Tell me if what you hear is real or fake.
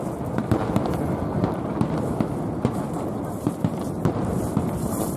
fake